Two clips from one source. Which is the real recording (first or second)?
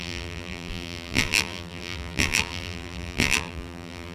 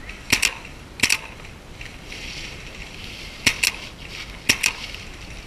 second